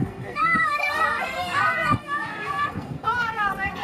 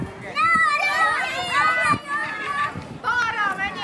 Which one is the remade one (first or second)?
first